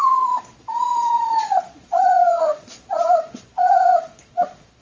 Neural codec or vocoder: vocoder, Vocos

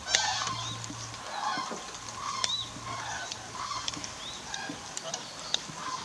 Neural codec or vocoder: none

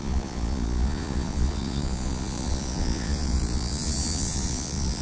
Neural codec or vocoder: vocoder, Vocos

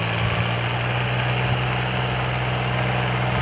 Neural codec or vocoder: none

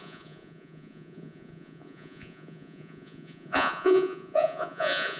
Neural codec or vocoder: vocoder, Vocos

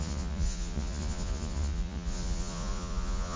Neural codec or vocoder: vocoder, Vocos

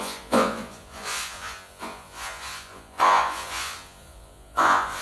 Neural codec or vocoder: vocoder, Vocos